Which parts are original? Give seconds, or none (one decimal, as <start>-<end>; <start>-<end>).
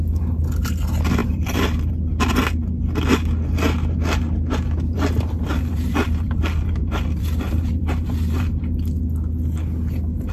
0.0-1.2; 1.9-4.9; 8.6-10.3